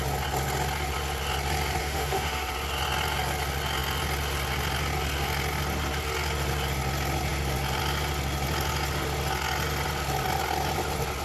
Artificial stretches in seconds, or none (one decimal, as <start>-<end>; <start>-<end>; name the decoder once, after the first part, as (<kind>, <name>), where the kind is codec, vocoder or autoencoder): 1.8-2.5 (autoencoder, DAC-VAE)